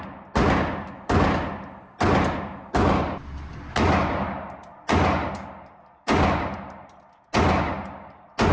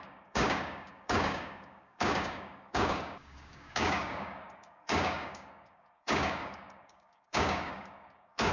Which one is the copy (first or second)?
second